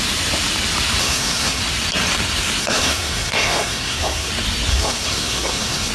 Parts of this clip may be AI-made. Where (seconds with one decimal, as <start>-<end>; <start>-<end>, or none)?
1.0-1.6; 2.6-4.3; 4.7-5.9